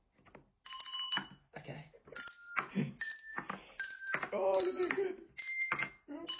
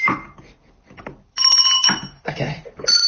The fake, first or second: second